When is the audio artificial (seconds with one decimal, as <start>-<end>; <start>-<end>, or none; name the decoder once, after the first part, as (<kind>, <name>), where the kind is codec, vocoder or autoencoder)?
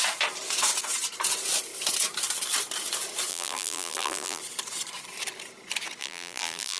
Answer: 3.3-4.4 (vocoder, BigVGAN v2); 6.0-6.8